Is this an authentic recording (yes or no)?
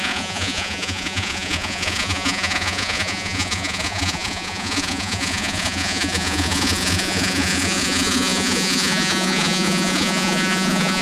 no